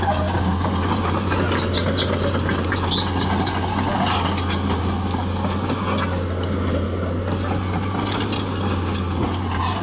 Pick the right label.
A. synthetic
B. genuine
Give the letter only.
B